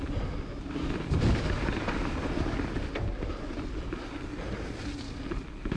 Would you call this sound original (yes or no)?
yes